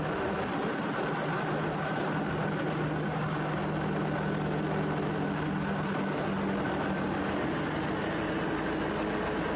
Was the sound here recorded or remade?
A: recorded